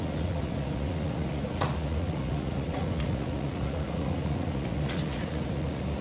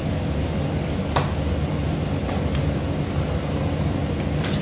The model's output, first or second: first